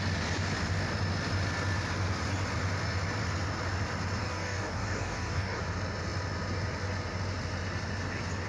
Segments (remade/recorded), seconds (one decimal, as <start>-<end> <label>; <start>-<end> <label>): 0.0-4.2 recorded; 4.2-5.6 remade; 5.6-8.5 recorded